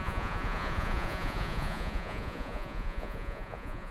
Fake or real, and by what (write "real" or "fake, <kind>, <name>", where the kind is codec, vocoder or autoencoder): fake, vocoder, Vocos